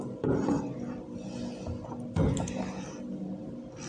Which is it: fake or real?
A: fake